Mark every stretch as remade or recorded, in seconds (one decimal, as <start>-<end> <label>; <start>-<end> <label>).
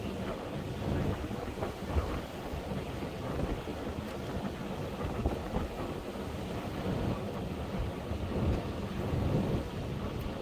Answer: 0.0-1.8 recorded; 1.8-2.6 remade; 2.6-10.4 recorded